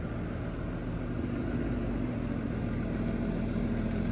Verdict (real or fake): real